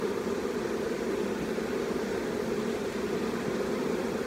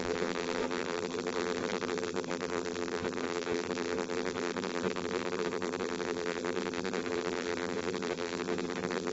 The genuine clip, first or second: first